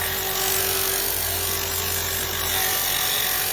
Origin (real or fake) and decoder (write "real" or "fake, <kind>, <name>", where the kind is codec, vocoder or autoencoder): real